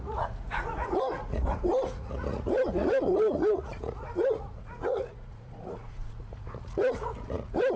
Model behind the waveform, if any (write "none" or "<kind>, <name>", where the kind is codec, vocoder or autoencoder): vocoder, Vocos